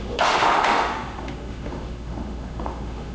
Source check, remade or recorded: remade